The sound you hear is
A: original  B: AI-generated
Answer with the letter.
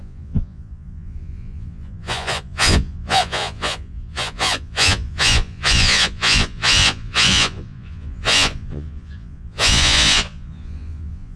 B